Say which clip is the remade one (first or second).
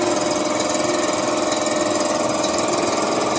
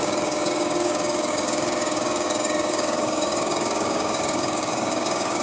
second